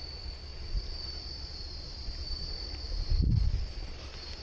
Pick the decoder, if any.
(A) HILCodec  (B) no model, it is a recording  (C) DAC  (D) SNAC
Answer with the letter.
B